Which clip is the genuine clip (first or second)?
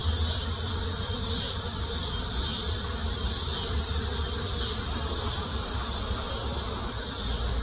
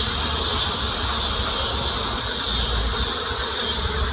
second